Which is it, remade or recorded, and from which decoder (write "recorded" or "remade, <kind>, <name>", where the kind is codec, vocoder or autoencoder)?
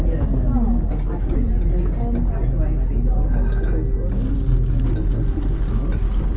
recorded